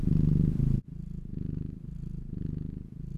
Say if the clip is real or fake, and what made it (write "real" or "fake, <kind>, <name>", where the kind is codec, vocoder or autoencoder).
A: real